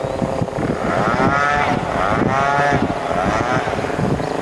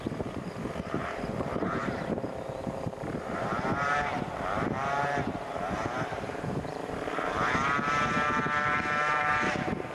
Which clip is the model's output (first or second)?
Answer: second